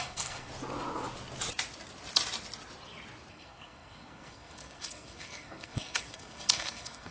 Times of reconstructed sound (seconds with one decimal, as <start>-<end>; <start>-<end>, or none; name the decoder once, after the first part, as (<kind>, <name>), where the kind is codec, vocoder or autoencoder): 0.0-0.5 (codec, SNAC); 3.3-7.1